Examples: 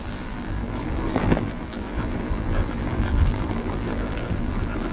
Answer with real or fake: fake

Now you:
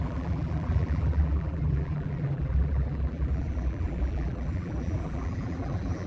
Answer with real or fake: fake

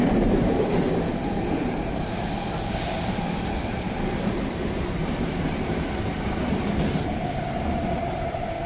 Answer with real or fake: fake